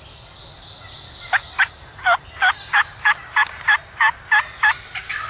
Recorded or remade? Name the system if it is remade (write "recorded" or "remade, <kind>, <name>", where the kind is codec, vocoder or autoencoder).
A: recorded